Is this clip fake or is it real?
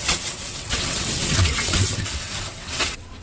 fake